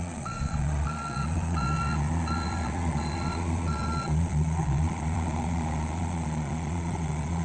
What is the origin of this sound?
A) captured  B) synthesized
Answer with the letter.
B